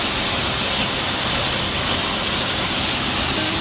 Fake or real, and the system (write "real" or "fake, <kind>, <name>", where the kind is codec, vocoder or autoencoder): real